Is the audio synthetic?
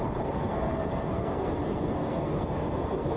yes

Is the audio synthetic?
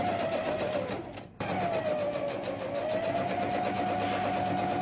no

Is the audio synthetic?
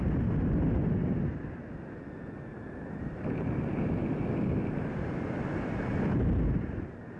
no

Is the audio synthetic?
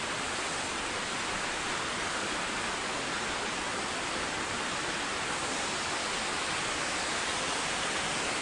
no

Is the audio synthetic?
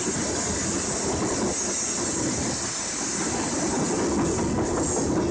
no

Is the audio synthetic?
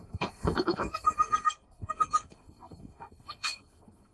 yes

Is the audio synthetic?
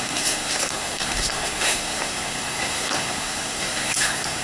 yes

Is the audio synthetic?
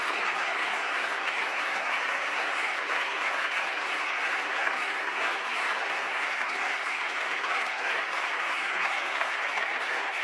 yes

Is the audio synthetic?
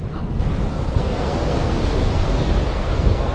yes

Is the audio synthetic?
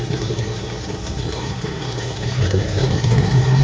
yes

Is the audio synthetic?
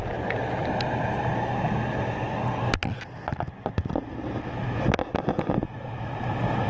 no